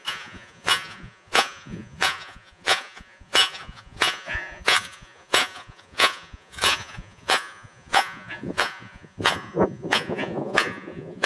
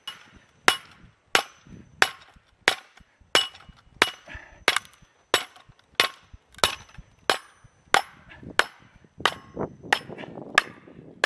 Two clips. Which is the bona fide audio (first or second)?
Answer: second